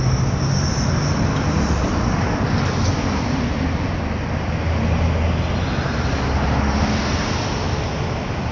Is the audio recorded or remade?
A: recorded